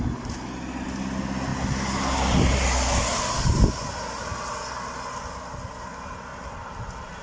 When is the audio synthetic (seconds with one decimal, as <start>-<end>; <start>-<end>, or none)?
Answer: none